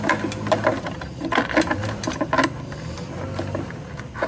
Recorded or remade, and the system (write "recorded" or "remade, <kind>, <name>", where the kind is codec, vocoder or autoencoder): recorded